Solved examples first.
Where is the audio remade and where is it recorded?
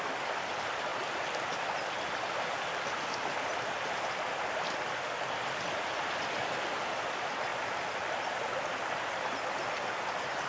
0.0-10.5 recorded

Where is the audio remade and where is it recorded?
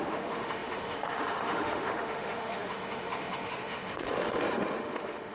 0.0-5.3 remade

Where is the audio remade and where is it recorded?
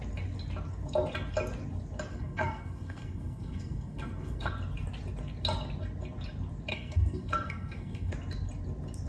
0.0-2.1 recorded; 2.1-4.5 remade; 4.5-6.7 recorded; 6.7-8.1 remade; 8.1-9.1 recorded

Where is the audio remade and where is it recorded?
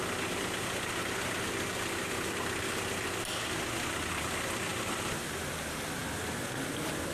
0.0-7.1 recorded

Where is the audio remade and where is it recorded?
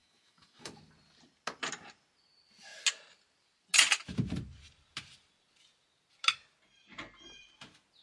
0.0-0.8 remade; 0.8-8.0 recorded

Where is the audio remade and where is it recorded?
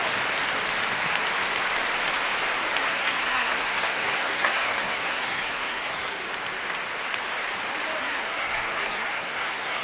0.0-2.9 recorded; 2.9-6.2 remade; 6.2-8.0 recorded; 8.0-9.8 remade